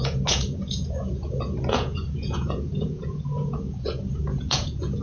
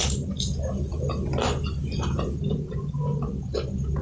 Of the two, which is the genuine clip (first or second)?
second